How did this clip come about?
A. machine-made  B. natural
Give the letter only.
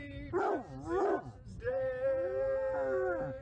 B